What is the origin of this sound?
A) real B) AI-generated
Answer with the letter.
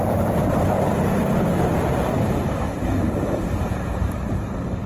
B